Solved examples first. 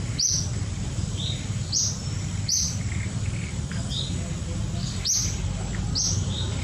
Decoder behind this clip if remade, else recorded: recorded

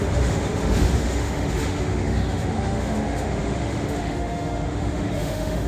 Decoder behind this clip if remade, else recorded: remade, autoencoder, DAC-VAE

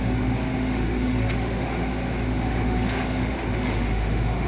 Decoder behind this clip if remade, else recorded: remade, autoencoder, DAC-VAE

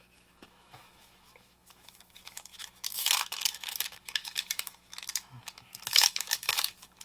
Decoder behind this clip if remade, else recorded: remade, autoencoder, DAC-VAE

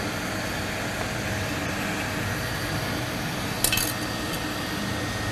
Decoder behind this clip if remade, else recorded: recorded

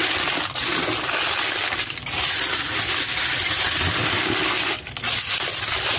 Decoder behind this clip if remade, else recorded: recorded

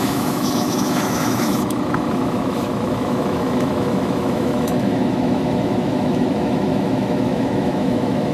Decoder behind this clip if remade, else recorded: remade, autoencoder, DAC-VAE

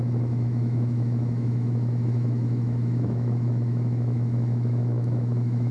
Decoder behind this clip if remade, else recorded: remade, autoencoder, DAC-VAE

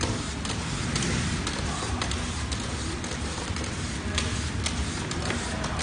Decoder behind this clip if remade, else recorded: recorded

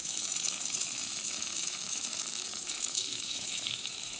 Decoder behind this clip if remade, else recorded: remade, autoencoder, DAC-VAE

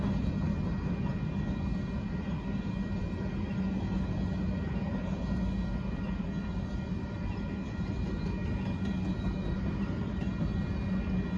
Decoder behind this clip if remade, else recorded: recorded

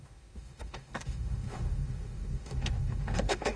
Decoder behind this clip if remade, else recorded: remade, autoencoder, DAC-VAE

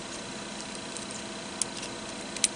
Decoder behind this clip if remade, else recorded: recorded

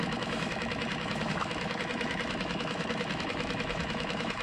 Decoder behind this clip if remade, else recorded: remade, autoencoder, DAC-VAE